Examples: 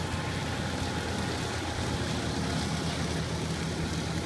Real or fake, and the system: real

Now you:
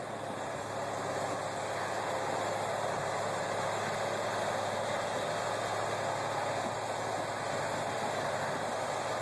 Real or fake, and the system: real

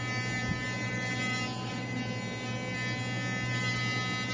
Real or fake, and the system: real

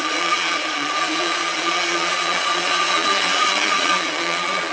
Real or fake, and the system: fake, vocoder, Vocos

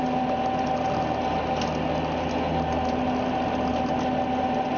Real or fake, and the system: real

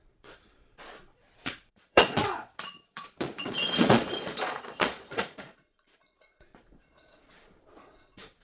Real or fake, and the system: fake, vocoder, Vocos